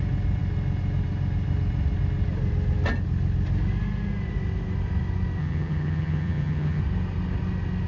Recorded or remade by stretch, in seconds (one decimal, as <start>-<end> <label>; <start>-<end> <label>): 0.0-5.4 recorded; 5.4-6.8 remade; 6.8-7.9 recorded

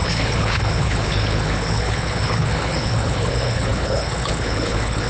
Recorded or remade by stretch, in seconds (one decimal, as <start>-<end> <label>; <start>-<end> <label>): 0.0-5.1 remade

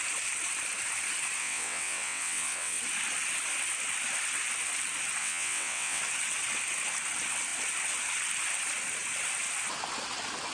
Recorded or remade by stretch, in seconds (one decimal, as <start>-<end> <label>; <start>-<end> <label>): 0.0-1.4 recorded; 1.4-2.8 remade; 2.8-5.2 recorded; 5.2-6.0 remade; 6.0-10.5 recorded